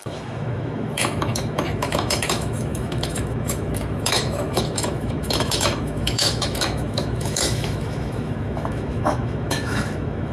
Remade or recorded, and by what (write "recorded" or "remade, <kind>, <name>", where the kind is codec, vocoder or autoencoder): remade, autoencoder, DAC-VAE